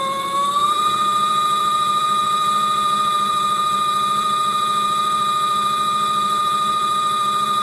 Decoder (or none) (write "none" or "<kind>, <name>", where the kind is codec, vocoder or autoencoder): vocoder, BigVGAN v2